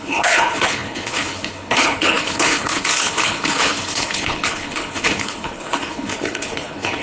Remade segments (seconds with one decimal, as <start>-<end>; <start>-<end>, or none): 0.0-7.0

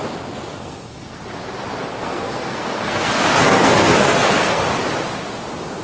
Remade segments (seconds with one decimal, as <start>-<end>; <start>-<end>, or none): 0.5-1.2; 1.9-4.6

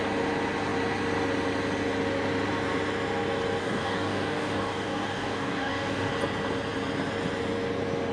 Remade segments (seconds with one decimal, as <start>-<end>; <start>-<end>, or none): 3.6-6.1